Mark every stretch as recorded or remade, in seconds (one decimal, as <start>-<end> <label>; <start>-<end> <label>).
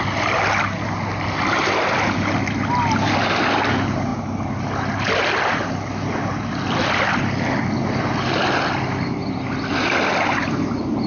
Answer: 0.0-11.1 recorded